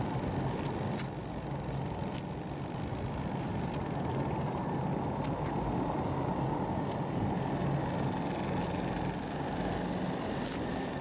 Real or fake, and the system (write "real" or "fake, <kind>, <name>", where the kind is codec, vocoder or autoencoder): real